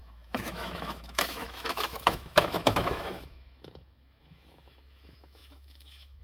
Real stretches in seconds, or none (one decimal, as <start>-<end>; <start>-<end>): none